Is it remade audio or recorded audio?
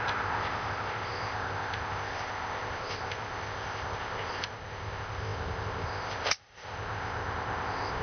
remade